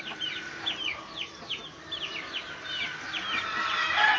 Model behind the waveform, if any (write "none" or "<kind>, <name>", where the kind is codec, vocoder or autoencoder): none